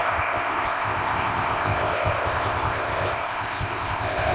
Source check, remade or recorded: remade